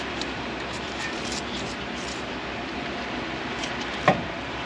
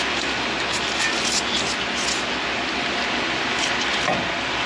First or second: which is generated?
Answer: first